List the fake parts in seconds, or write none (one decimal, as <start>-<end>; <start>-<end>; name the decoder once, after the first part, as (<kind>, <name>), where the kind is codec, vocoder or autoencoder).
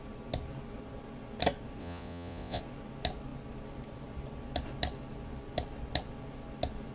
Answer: 1.8-2.6 (vocoder, Vocos)